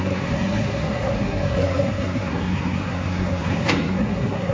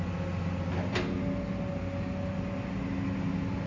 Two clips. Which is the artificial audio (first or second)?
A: first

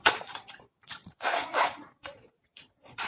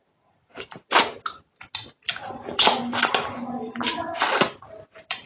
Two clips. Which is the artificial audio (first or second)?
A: first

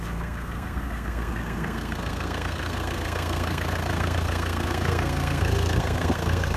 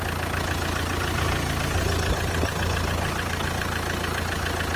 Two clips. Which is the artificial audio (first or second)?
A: first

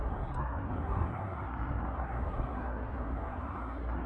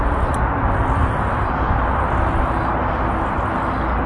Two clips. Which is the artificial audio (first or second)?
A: first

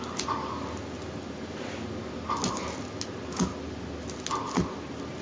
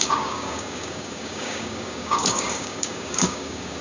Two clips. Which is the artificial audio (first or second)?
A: second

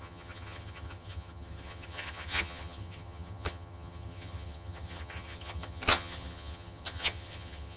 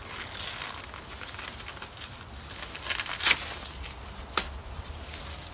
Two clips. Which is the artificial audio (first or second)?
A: first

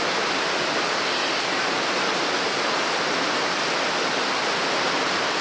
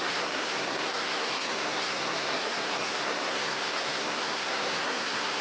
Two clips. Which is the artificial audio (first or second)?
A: second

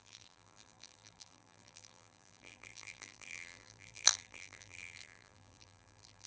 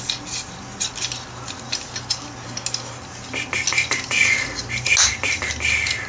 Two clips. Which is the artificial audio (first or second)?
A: first